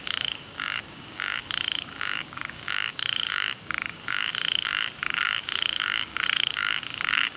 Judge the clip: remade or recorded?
remade